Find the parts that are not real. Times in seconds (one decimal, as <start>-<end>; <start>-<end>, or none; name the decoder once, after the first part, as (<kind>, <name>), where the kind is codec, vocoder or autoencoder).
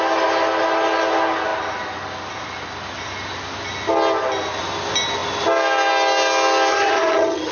6.7-7.5 (vocoder, HiFi-GAN)